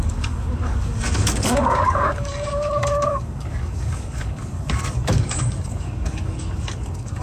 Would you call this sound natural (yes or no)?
no